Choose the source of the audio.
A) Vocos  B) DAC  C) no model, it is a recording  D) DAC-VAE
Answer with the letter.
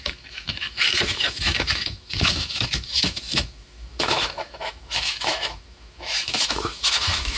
D